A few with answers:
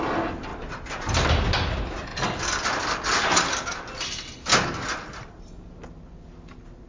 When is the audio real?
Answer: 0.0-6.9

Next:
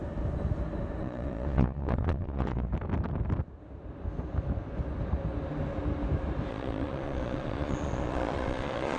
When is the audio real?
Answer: 0.0-1.0; 2.7-6.5

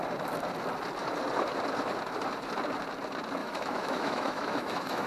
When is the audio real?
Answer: 0.0-3.4